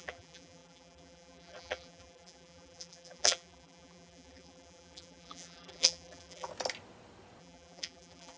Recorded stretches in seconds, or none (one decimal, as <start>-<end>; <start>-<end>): 6.5-7.4